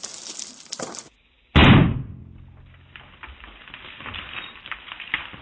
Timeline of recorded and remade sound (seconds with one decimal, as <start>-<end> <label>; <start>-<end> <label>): 0.0-5.4 recorded